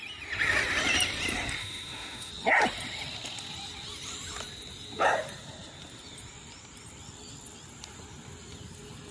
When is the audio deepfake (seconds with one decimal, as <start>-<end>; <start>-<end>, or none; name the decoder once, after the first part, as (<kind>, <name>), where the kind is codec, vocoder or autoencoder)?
1.6-2.3 (autoencoder, DAC-VAE)